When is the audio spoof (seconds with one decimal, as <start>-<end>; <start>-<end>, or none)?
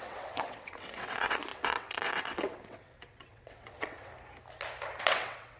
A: 0.0-4.1; 5.0-5.6